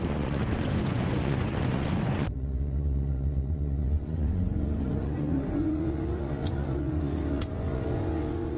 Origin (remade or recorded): remade